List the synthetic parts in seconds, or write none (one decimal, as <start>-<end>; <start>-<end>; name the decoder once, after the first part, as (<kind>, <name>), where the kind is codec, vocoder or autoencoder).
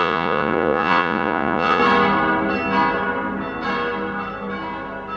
0.0-1.8 (vocoder, Vocos)